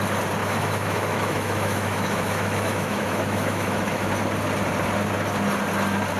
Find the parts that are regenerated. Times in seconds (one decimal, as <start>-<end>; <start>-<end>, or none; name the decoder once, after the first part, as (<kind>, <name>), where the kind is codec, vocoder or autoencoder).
0.4-4.1 (autoencoder, DAC-VAE)